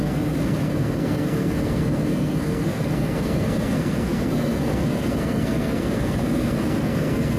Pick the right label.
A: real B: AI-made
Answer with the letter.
B